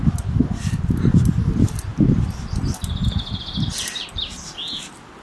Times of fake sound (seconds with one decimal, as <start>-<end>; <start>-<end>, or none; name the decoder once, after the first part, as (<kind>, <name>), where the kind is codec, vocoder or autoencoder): none